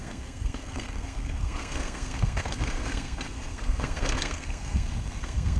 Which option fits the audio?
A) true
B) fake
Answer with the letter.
B